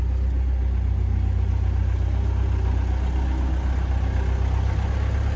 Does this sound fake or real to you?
real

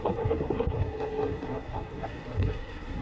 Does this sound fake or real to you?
fake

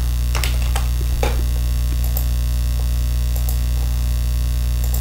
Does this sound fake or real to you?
real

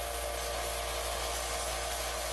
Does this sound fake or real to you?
real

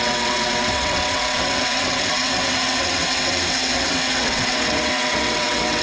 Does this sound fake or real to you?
fake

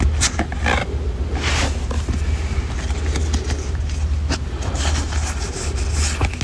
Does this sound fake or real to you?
real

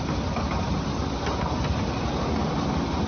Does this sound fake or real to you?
real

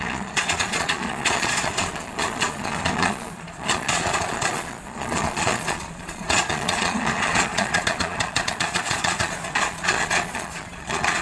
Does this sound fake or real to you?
fake